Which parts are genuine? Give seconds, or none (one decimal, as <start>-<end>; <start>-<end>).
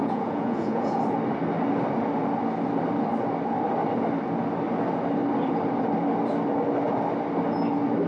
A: 1.0-8.1